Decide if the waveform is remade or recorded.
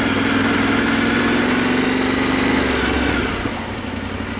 recorded